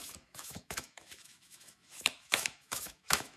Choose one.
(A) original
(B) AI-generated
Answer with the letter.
B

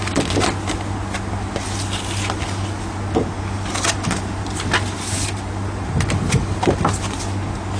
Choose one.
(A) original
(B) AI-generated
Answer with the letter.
A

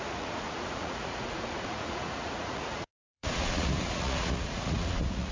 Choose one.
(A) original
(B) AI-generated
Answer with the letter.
B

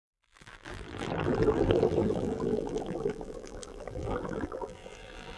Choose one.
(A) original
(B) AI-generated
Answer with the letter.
B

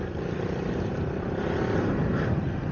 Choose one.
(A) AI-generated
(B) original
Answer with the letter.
B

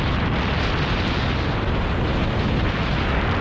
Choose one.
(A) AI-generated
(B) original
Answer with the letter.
B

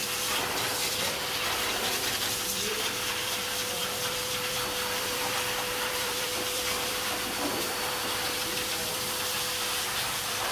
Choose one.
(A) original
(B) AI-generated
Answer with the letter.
B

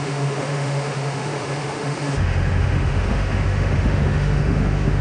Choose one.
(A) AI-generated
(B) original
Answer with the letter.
A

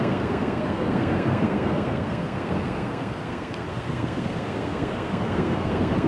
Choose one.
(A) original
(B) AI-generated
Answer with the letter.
B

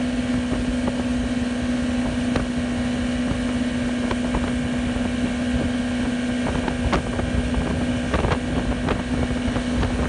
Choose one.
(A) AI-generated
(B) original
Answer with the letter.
B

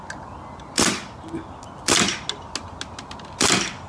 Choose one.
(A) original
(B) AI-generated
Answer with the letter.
A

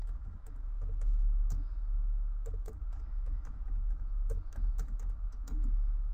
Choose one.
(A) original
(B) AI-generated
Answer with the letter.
B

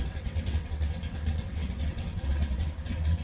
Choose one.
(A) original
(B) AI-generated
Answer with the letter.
B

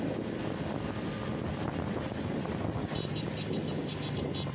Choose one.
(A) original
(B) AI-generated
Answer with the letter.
A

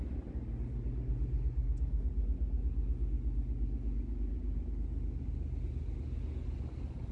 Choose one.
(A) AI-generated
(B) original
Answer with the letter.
B